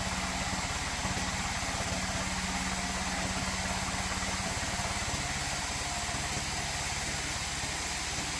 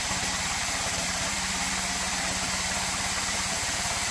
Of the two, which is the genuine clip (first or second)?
first